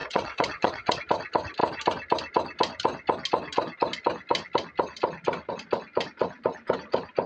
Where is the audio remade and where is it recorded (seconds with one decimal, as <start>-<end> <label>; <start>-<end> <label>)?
0.0-1.0 remade; 1.0-7.3 recorded